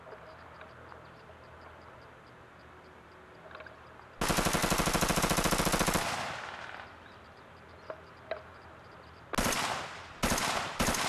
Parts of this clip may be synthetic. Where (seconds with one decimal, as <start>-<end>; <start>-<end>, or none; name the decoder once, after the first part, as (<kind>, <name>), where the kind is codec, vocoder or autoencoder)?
none